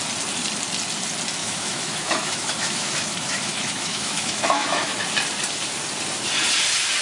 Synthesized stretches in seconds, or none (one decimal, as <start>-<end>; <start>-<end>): 1.4-5.0